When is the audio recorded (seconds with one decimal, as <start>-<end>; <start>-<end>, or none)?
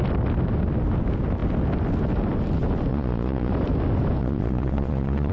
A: 0.0-2.9; 3.5-4.2